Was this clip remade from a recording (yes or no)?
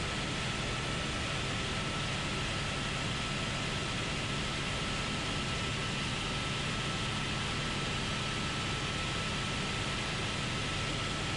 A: no